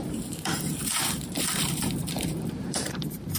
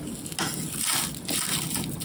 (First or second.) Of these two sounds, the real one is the second